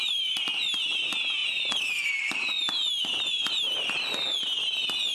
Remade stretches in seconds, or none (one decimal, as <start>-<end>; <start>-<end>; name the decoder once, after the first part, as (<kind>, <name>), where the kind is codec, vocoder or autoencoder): none